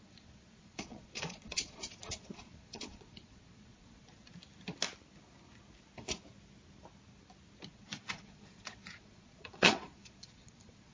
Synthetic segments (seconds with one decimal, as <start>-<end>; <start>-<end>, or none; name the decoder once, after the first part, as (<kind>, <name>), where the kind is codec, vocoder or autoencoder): 0.0-4.3 (vocoder, Vocos); 7.7-10.9